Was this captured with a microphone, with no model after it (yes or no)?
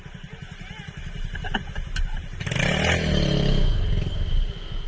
yes